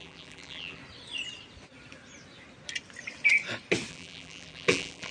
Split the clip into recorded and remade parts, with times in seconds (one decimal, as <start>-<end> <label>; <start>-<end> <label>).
0.0-0.8 remade; 0.8-3.9 recorded; 3.9-5.1 remade